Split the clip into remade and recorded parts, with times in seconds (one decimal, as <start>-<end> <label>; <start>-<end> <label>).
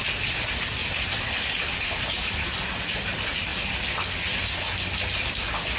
0.0-0.8 recorded; 0.8-2.0 remade; 2.0-5.8 recorded